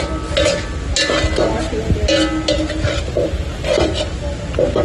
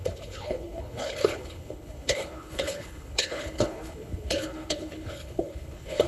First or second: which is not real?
second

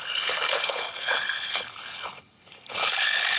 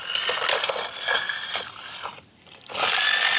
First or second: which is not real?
first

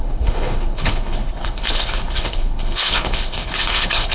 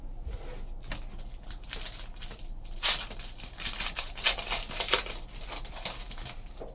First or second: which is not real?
first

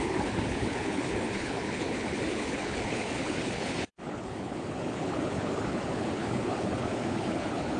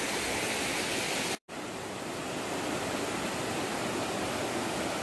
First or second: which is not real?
first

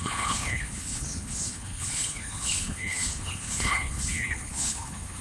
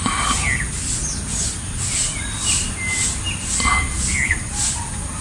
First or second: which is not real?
first